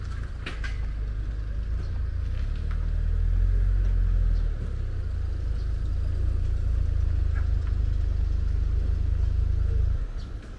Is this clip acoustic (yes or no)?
yes